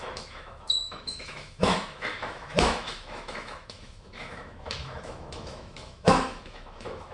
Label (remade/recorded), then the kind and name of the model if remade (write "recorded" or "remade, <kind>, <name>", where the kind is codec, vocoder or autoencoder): remade, autoencoder, DAC-VAE